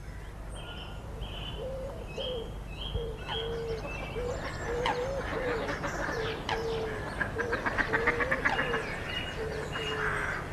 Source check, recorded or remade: recorded